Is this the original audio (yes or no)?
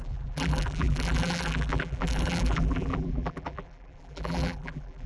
no